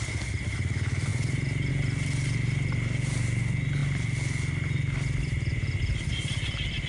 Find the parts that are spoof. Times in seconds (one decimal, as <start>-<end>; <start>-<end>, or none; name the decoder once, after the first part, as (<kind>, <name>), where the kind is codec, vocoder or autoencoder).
none